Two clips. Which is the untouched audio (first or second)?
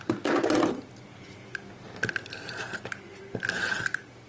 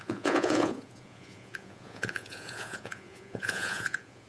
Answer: first